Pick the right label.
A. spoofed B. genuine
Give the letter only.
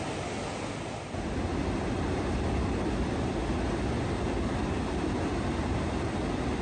B